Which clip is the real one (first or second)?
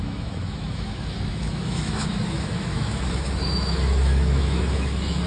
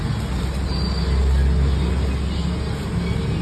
second